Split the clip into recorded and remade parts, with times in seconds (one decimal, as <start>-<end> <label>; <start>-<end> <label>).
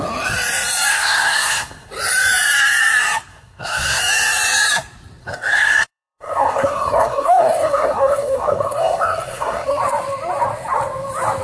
0.0-0.9 recorded; 0.9-1.9 remade; 1.9-3.3 recorded; 3.3-4.0 remade; 4.0-5.2 recorded; 5.2-9.8 remade; 9.8-11.4 recorded